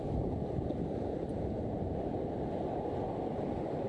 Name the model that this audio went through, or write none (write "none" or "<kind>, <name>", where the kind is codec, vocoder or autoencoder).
vocoder, BigVGAN v2